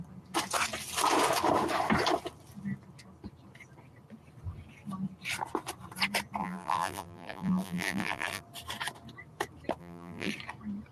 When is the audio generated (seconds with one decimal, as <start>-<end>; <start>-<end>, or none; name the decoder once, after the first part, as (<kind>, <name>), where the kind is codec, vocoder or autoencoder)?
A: 6.4-8.4 (vocoder, BigVGAN v2); 9.8-10.3